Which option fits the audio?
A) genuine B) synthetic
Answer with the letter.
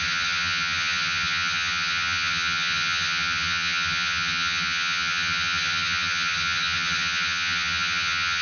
B